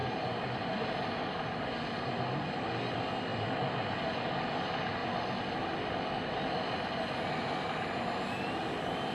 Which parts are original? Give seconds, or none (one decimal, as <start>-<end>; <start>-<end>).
0.0-9.1